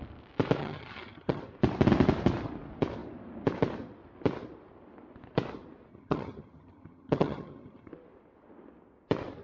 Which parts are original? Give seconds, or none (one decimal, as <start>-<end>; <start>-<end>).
0.0-0.6; 1.4-5.9; 7.9-9.4